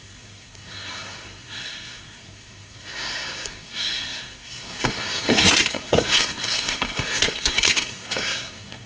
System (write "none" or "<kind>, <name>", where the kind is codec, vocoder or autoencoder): codec, SNAC